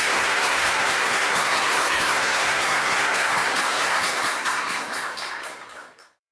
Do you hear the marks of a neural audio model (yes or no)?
yes